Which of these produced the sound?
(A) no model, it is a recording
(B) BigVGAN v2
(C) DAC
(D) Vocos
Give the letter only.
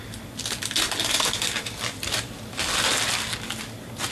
A